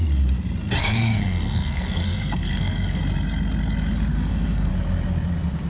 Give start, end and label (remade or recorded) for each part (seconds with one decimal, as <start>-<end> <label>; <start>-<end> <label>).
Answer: 0.0-0.8 recorded; 0.8-3.0 remade; 3.0-4.1 recorded; 4.1-4.7 remade; 4.7-5.7 recorded